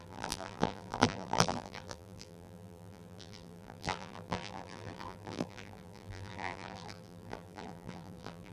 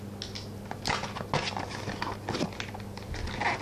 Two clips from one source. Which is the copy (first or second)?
first